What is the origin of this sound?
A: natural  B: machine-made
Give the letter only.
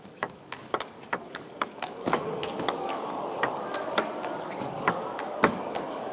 B